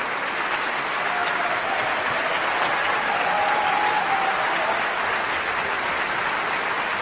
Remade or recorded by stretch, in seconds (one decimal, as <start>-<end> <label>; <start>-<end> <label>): 0.0-7.0 recorded